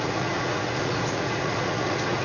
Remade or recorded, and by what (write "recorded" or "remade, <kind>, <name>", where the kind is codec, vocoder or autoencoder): remade, vocoder, Vocos